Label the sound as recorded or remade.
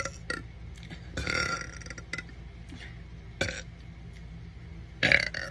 recorded